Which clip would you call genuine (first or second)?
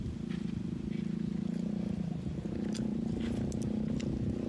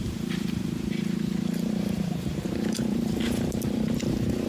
first